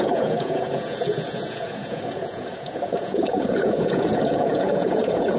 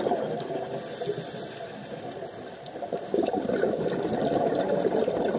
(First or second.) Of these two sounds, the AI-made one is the first